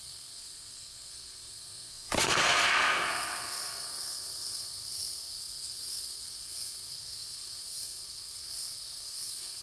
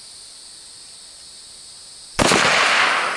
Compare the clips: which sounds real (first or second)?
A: second